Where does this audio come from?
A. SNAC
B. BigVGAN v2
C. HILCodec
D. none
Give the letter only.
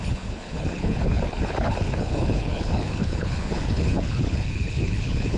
C